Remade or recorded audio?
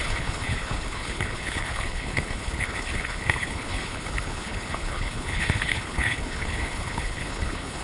remade